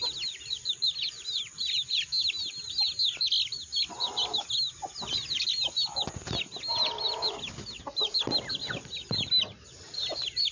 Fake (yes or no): no